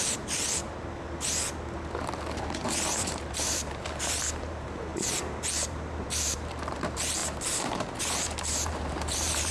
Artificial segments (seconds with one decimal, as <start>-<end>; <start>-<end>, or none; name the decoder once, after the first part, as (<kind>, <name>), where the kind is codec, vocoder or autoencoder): 0.0-0.6 (vocoder, BigVGAN v2); 2.4-9.5